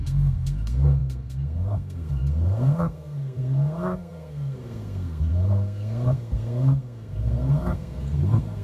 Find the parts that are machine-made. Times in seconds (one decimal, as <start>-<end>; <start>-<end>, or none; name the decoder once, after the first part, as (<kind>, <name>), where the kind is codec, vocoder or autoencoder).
0.0-8.6 (codec, SNAC)